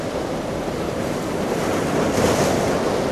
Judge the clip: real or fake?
real